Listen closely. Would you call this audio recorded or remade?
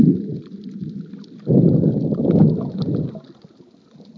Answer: recorded